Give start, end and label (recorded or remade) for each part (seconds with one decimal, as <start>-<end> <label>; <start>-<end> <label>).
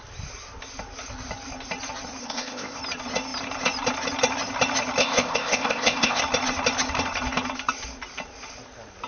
0.0-2.2 recorded; 2.2-2.8 remade; 2.8-5.0 recorded; 5.0-6.2 remade; 6.2-9.1 recorded